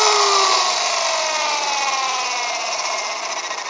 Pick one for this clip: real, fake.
real